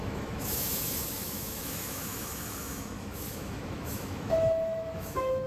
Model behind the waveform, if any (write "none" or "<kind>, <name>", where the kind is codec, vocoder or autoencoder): autoencoder, DAC-VAE